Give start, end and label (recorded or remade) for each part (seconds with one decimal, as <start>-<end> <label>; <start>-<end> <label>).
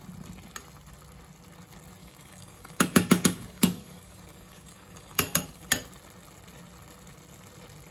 0.0-2.0 recorded; 2.0-5.7 remade; 5.7-7.9 recorded